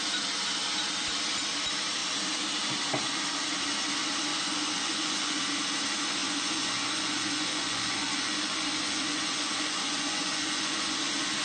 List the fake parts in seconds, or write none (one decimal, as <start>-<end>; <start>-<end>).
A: 4.3-5.4; 6.2-11.0